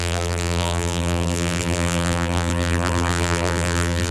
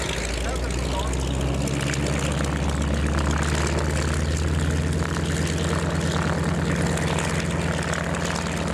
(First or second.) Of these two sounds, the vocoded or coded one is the first